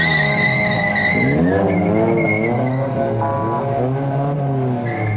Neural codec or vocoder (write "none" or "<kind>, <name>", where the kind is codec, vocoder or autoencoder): none